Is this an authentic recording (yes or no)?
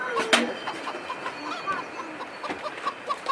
yes